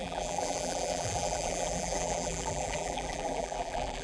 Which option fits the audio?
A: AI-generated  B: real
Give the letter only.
A